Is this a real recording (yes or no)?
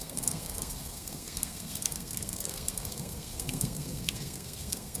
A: no